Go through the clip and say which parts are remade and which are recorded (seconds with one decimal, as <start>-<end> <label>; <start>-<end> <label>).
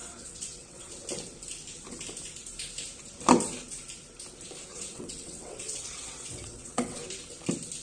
0.0-0.9 remade; 0.9-4.7 recorded; 4.7-7.0 remade; 7.0-7.8 recorded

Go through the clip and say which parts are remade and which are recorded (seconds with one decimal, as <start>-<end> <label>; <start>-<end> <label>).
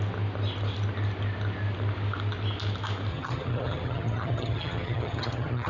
0.0-3.1 recorded; 3.1-5.7 remade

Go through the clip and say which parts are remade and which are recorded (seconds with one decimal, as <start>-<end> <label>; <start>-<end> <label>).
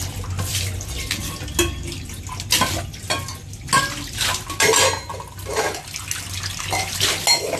0.0-7.6 recorded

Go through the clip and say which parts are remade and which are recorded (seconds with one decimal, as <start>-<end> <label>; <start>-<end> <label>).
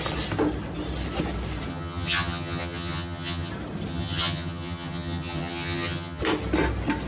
0.0-1.7 recorded; 1.7-3.5 remade; 3.5-3.9 recorded; 3.9-6.2 remade; 6.2-7.1 recorded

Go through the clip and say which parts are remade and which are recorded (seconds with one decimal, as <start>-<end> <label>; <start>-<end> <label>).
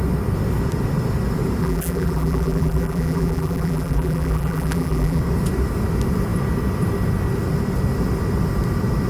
0.0-1.6 recorded; 1.6-5.2 remade; 5.2-9.1 recorded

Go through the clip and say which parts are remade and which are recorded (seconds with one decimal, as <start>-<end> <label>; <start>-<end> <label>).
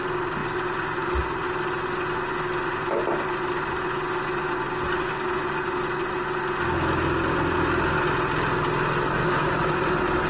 0.0-9.2 recorded; 9.2-9.8 remade; 9.8-10.3 recorded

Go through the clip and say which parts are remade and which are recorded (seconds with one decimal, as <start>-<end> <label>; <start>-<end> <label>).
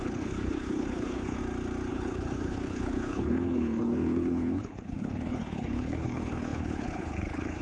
0.0-1.4 remade; 1.4-1.9 recorded; 1.9-7.6 remade